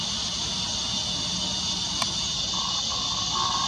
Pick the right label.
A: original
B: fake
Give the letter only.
A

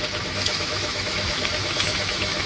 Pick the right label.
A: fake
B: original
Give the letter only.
A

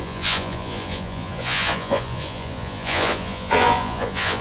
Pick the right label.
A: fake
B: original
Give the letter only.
A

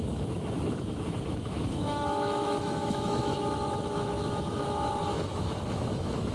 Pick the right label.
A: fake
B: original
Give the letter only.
A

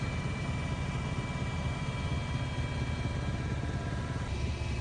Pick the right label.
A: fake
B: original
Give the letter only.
B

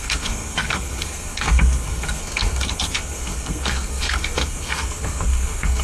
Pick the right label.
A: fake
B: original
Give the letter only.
A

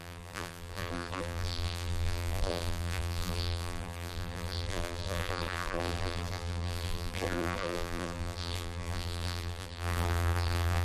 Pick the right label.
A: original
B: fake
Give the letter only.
B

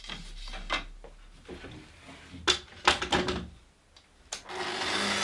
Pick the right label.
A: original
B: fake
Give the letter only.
A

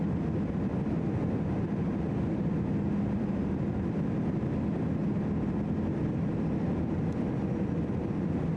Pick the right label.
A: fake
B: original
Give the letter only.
B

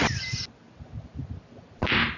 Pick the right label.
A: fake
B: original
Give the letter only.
B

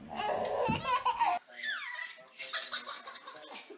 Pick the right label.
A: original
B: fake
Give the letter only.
A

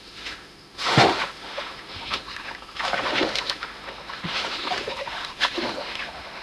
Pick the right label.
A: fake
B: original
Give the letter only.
A